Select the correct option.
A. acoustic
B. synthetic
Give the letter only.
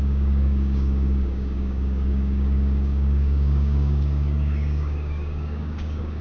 B